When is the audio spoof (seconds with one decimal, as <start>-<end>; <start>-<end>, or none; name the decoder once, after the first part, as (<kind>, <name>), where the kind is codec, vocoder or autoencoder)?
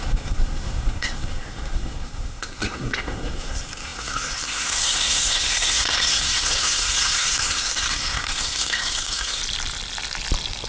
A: 0.0-9.4 (codec, SNAC)